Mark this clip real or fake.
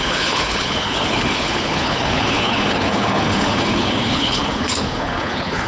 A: fake